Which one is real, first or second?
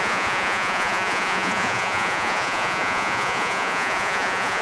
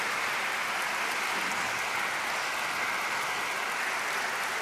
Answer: second